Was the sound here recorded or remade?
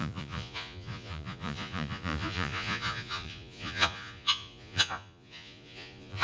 remade